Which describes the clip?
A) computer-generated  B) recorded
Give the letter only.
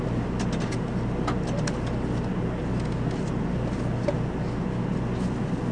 B